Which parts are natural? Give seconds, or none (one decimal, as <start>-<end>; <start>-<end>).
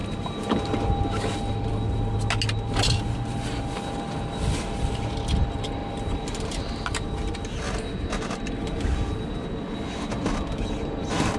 0.0-11.4